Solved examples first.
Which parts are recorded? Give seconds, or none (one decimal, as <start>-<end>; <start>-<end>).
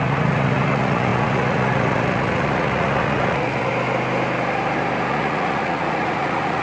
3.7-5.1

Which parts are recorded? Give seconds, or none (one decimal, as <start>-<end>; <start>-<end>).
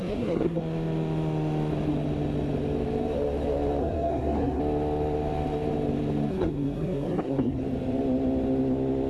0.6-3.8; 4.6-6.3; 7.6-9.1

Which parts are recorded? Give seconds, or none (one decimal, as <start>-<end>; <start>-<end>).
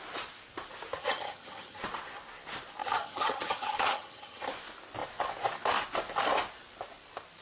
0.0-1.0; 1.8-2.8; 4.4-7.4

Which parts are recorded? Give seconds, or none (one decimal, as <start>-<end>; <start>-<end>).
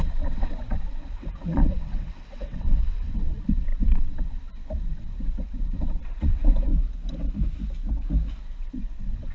6.7-8.4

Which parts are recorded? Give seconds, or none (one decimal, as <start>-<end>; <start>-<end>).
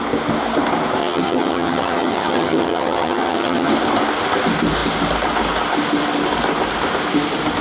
0.0-1.0; 3.7-7.6